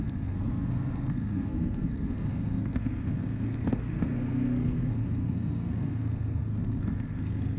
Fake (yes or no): yes